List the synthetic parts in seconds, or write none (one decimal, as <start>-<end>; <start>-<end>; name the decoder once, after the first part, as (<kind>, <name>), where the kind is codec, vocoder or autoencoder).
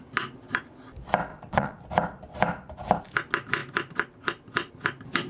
1.3-1.9 (vocoder, Vocos)